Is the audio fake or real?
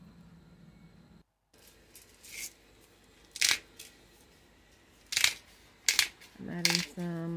real